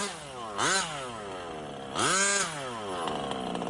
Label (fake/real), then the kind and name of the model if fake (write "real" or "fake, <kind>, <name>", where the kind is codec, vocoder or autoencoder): real